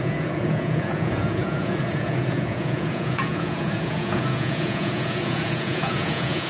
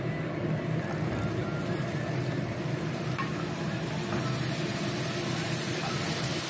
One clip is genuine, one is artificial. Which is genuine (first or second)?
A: second